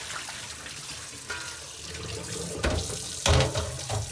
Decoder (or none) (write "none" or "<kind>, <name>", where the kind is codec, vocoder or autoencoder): none